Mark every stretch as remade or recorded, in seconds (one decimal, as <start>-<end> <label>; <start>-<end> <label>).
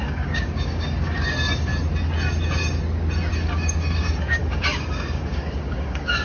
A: 0.0-1.7 remade; 1.7-3.3 recorded; 3.3-6.2 remade